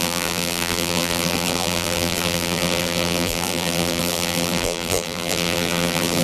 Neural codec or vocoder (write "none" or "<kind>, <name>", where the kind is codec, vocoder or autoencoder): vocoder, BigVGAN v2